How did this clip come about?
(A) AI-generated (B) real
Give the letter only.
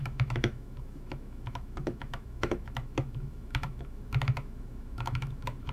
A